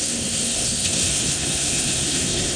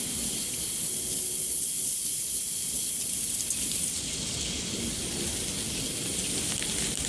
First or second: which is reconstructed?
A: first